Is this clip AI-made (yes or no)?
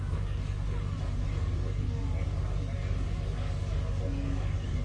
yes